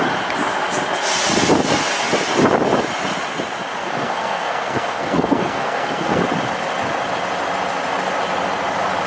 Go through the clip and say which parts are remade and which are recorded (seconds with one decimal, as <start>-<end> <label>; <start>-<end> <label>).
0.0-3.8 recorded; 3.8-6.2 remade; 6.2-9.1 recorded